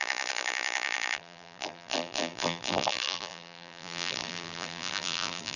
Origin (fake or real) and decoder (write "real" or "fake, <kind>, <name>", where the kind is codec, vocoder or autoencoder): fake, vocoder, BigVGAN v2